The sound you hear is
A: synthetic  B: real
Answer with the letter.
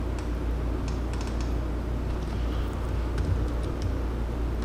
B